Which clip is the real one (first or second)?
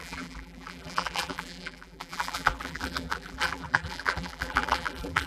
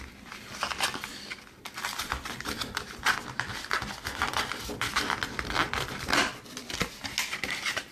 second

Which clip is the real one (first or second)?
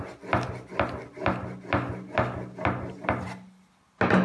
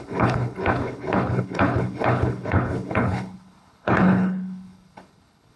first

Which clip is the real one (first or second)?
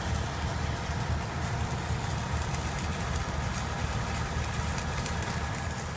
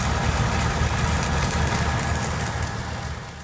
second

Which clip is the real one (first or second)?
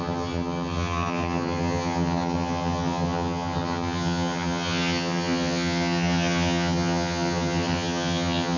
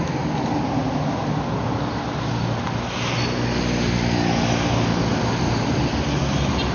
second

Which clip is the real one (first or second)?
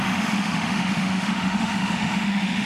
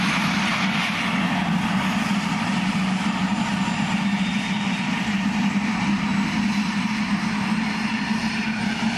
second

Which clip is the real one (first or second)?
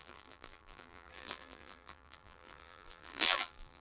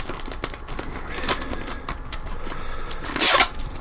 second